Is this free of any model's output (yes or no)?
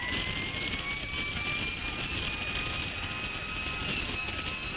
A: yes